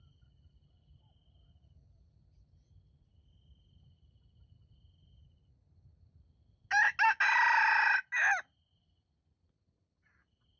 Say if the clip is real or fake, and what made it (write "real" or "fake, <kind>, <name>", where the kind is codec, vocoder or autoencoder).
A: real